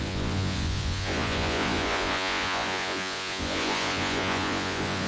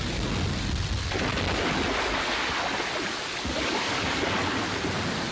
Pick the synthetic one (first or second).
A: first